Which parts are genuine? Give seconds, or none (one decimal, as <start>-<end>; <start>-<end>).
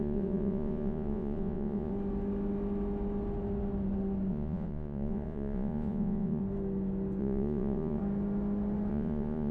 1.9-4.3; 6.4-7.2; 8.0-8.9